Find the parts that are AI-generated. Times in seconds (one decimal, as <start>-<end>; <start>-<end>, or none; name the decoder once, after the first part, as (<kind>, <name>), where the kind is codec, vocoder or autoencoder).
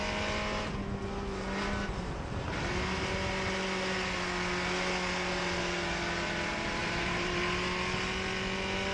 6.8-7.4 (vocoder, BigVGAN v2)